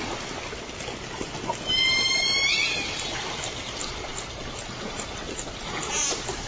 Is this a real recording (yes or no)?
yes